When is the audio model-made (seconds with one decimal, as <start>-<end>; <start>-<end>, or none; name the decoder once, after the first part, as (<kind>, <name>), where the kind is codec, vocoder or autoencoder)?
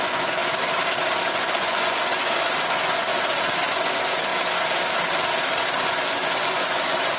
0.0-0.4 (vocoder, Vocos); 1.3-3.1; 3.7-4.3; 5.6-7.2